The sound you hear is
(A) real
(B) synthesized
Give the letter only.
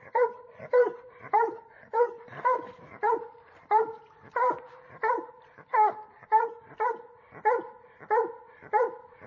B